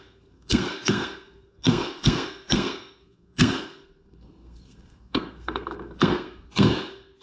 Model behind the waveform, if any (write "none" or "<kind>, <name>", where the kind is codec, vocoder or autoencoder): codec, SNAC